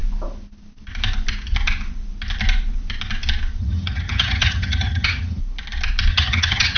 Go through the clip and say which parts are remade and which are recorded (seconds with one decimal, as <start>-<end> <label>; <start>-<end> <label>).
0.0-3.6 recorded; 3.6-5.4 remade; 5.4-6.1 recorded; 6.1-6.8 remade

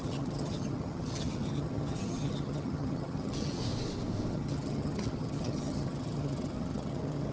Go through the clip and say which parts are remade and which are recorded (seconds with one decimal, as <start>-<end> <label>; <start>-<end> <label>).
0.0-3.6 remade; 3.6-4.3 recorded; 4.3-7.3 remade